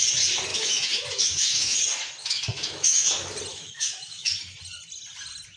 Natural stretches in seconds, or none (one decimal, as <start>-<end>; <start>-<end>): 0.0-0.5; 1.8-2.2; 3.1-3.5; 4.3-5.6